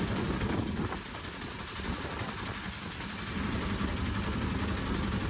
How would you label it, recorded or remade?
recorded